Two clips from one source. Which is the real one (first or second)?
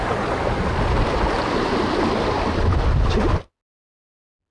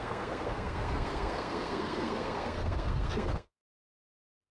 first